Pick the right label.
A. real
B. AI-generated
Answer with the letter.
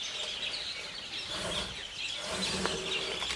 A